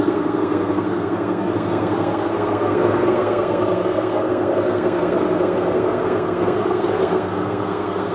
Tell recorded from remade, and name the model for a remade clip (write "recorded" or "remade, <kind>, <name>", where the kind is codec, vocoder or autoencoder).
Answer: remade, codec, SNAC